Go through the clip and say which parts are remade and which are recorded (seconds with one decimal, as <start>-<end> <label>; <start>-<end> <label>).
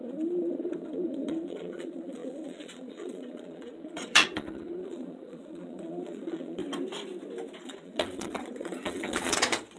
0.0-6.6 remade; 6.6-7.6 recorded; 7.6-9.8 remade